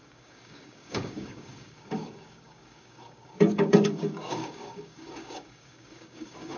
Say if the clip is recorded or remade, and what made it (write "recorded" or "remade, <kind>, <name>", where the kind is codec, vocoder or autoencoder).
remade, codec, DAC